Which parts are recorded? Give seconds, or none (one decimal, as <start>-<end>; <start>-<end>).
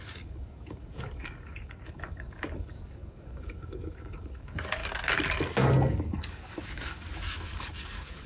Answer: 4.8-5.9